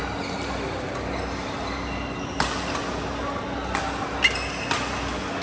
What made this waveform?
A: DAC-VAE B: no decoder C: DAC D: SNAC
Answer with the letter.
B